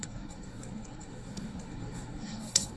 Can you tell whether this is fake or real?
fake